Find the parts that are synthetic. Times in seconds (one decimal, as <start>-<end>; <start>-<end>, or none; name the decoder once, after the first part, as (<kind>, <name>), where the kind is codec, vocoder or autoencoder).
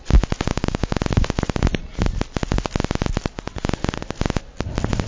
0.5-1.0 (codec, DAC)